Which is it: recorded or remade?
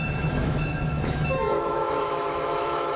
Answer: remade